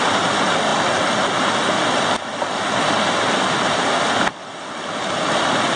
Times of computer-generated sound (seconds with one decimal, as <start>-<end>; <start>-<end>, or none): none